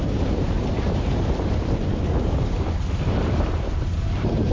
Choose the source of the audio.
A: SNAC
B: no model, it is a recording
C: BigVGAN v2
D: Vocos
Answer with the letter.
C